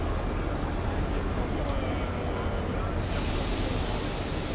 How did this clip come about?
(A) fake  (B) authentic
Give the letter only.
B